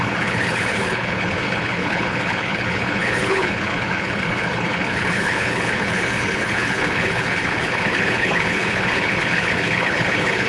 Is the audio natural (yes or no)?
no